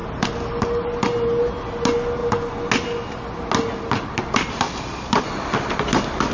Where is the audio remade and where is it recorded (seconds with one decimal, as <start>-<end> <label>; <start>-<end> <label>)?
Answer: 0.0-6.3 recorded